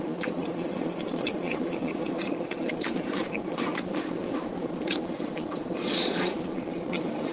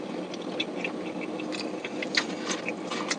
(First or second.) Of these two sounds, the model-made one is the first